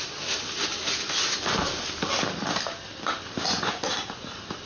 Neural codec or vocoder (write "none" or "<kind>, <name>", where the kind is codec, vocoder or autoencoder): none